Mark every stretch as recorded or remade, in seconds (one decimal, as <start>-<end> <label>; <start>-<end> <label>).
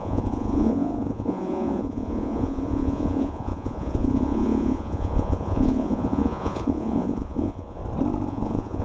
0.0-7.8 remade; 7.8-8.3 recorded; 8.3-8.8 remade